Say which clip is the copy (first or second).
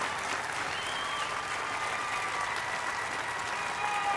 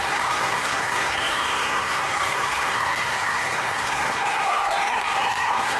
second